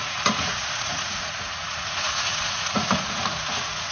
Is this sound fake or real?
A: fake